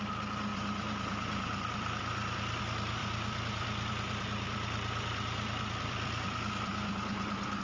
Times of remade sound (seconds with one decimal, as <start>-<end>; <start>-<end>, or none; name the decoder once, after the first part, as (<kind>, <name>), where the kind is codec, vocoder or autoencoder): 0.5-2.6 (vocoder, BigVGAN v2); 3.0-7.6